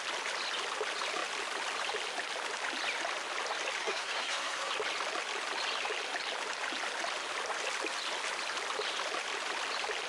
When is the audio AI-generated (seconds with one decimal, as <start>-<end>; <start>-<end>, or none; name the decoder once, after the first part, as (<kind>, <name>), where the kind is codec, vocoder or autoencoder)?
3.8-4.7 (codec, SNAC)